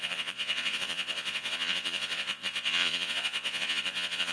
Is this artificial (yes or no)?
yes